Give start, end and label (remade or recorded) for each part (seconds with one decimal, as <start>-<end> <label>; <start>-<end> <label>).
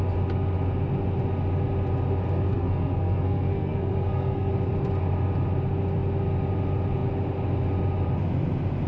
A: 0.0-2.5 recorded; 2.5-4.5 remade; 4.5-8.9 recorded